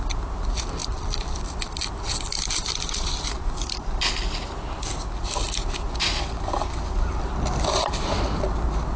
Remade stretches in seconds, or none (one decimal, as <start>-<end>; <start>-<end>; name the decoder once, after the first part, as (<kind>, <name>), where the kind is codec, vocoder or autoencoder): 0.8-4.8 (vocoder, BigVGAN v2); 6.1-7.9